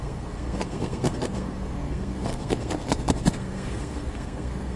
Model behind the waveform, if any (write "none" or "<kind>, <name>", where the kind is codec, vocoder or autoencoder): codec, SNAC